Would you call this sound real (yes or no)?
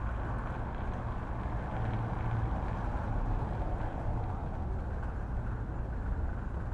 yes